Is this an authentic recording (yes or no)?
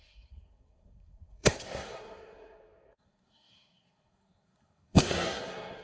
no